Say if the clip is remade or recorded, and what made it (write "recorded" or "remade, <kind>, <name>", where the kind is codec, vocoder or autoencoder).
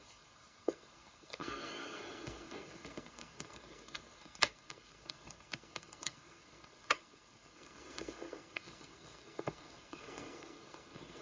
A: remade, codec, SNAC